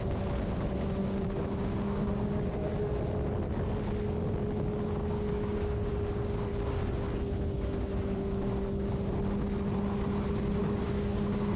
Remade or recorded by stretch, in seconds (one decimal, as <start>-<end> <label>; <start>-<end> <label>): 0.0-1.0 recorded; 1.0-2.7 remade; 2.7-5.0 recorded; 5.0-5.9 remade; 5.9-6.5 recorded; 6.5-9.1 remade; 9.1-10.6 recorded; 10.6-11.6 remade